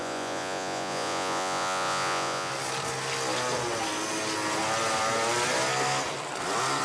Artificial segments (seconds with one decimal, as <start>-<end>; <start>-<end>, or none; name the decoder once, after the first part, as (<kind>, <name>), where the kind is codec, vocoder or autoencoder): 0.0-2.5 (vocoder, Vocos)